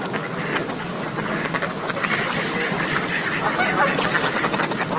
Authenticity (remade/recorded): recorded